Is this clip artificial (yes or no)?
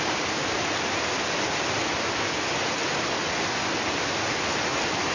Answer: no